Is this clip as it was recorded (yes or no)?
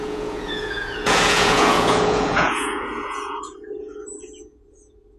no